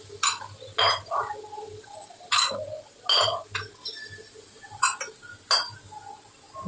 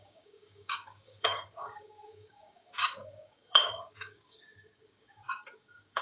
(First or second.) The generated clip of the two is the second